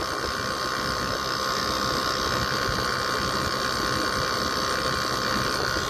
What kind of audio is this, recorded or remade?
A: recorded